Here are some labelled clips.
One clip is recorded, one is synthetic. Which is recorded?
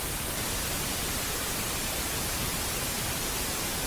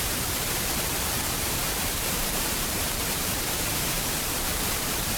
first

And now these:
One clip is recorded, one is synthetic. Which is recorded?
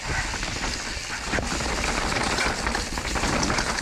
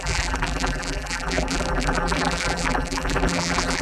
first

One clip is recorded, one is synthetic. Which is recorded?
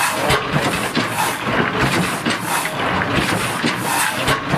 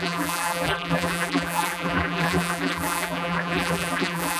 first